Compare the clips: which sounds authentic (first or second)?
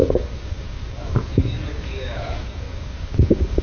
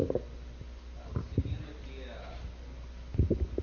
second